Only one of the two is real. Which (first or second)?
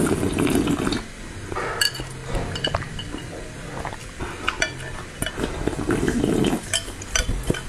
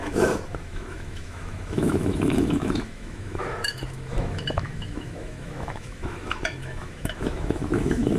first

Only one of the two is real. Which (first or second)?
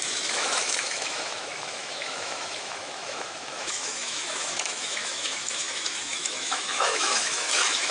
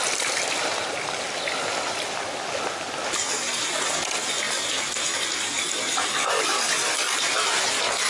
second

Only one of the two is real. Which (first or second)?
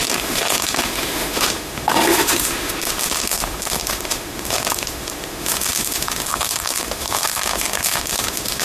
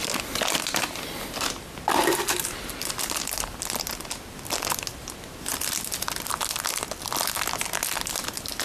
second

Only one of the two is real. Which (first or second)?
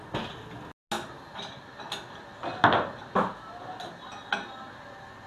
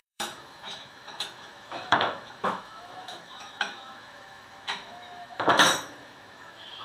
first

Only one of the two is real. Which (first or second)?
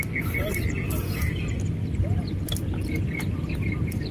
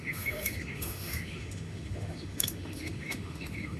first